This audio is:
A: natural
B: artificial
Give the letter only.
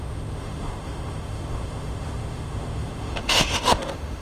B